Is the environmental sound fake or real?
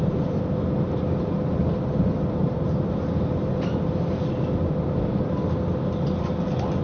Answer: real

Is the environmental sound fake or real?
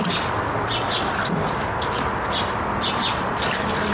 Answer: real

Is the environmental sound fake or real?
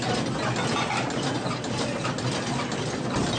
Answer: real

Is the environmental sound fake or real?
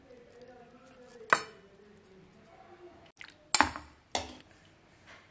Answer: real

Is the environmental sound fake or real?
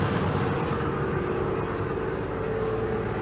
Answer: real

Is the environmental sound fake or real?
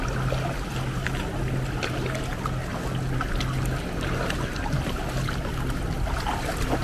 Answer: real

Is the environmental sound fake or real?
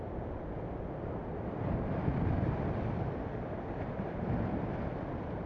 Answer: real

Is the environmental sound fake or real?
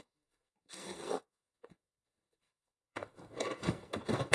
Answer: fake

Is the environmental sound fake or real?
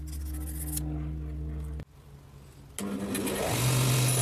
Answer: real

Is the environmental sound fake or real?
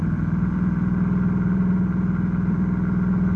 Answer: fake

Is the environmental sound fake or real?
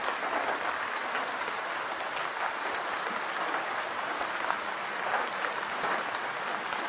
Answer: real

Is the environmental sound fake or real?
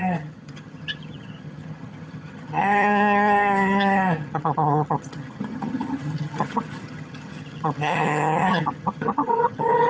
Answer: fake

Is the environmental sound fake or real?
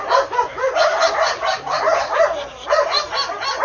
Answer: real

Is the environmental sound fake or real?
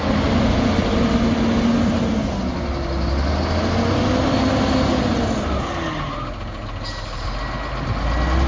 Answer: real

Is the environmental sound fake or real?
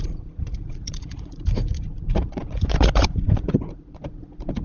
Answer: fake